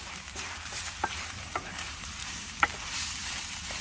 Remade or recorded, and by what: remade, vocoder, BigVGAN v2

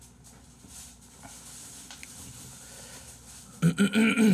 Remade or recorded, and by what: recorded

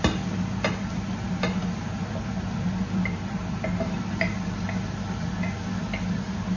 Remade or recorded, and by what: remade, vocoder, BigVGAN v2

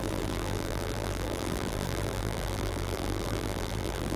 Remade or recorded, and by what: remade, vocoder, BigVGAN v2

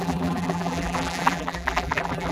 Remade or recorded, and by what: remade, vocoder, BigVGAN v2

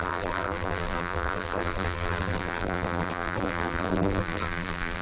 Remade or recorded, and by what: remade, vocoder, BigVGAN v2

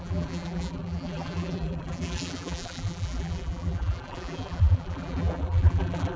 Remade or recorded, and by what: remade, vocoder, BigVGAN v2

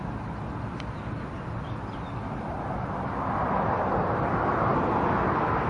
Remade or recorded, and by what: recorded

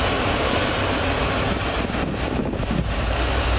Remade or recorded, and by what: remade, vocoder, BigVGAN v2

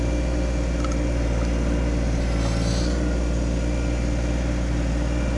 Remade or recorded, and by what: recorded